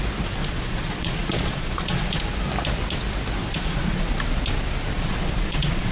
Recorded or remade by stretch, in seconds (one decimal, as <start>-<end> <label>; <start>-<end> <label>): 0.0-0.4 recorded; 0.4-2.2 remade; 2.2-3.4 recorded; 3.4-4.1 remade; 4.1-4.9 recorded; 4.9-5.9 remade